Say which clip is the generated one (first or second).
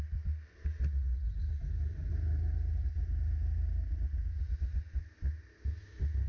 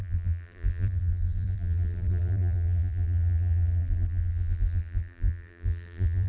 second